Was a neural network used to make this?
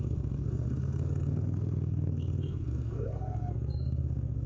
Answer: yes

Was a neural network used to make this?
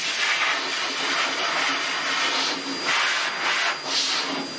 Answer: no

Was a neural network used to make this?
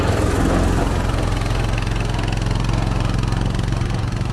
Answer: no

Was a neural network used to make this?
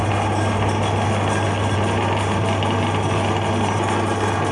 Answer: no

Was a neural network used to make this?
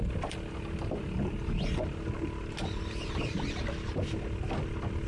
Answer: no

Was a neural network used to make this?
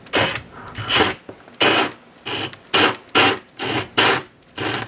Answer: no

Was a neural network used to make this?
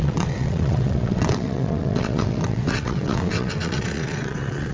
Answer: yes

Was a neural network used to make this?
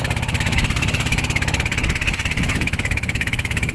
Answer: yes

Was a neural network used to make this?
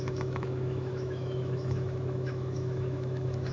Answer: yes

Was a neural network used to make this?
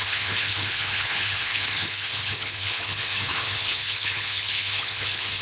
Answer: yes